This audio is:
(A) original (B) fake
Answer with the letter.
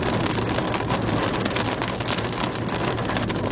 A